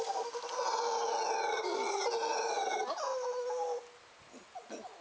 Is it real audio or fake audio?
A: real